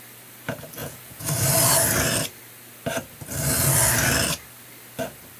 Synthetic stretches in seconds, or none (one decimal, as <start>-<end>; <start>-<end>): 0.8-1.3

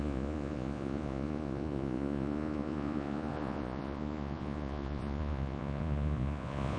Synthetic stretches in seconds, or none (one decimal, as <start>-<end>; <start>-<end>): 0.0-6.8

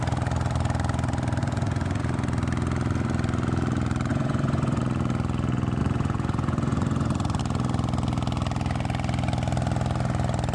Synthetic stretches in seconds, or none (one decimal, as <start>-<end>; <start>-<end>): 1.4-2.0; 4.1-4.8; 5.8-7.4

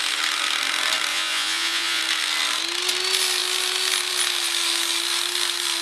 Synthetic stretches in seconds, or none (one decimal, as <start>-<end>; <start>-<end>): 1.1-2.0

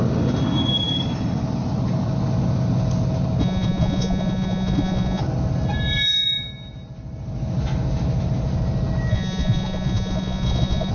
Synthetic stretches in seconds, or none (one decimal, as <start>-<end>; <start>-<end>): 3.4-5.2; 9.1-10.9

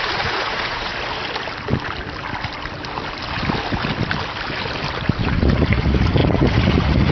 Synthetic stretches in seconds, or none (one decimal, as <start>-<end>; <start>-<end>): 0.0-0.9; 5.2-7.1